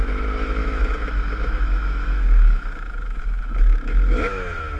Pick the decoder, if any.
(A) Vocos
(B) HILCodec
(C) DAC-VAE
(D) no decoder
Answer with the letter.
C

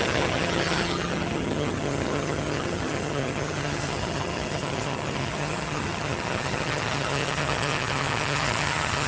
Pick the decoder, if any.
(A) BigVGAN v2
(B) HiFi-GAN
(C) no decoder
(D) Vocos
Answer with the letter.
B